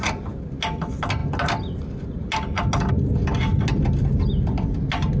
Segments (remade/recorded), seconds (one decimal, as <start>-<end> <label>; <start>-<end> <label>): 0.0-5.2 recorded